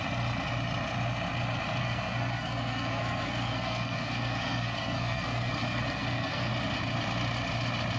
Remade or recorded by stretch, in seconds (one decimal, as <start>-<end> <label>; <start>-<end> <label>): 0.0-1.8 recorded; 1.8-6.5 remade; 6.5-8.0 recorded

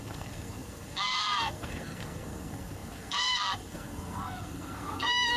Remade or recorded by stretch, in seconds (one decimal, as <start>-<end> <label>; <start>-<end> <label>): 0.0-5.4 remade

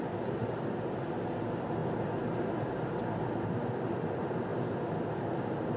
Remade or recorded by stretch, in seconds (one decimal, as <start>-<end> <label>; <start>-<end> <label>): 0.0-5.8 recorded

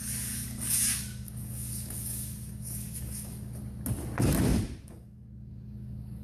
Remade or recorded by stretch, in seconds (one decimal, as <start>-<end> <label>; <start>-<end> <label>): 0.0-3.6 remade; 3.6-4.8 recorded; 4.8-6.2 remade

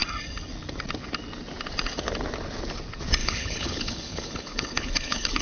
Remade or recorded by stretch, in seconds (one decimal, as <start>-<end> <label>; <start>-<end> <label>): 0.0-3.2 recorded; 3.2-5.4 remade

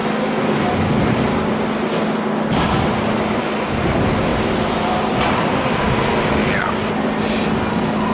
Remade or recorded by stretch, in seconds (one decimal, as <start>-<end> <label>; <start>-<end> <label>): 0.0-8.1 recorded

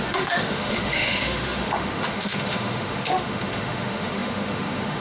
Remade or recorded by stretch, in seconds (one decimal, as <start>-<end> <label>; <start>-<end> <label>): 0.0-5.0 remade